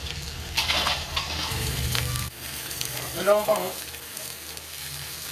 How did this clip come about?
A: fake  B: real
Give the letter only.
A